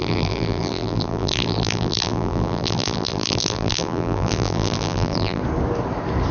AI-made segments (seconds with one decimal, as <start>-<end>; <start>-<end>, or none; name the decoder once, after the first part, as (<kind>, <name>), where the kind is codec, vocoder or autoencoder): 0.0-5.4 (vocoder, BigVGAN v2)